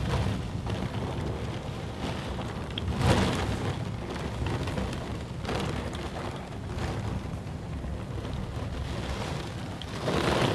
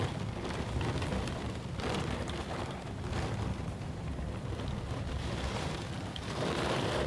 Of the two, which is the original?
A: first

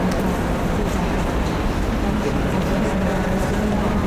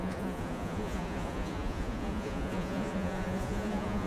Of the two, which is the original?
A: first